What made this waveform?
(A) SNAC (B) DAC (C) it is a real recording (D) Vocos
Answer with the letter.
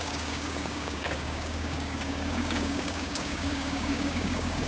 B